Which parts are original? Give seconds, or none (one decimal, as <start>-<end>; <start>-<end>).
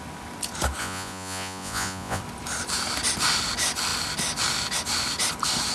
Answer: 0.0-0.8; 2.2-5.7